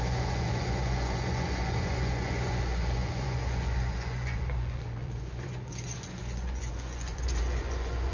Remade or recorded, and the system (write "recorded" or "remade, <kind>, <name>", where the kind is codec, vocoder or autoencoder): remade, vocoder, Vocos